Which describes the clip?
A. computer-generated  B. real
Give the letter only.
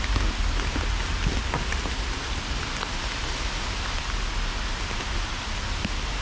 B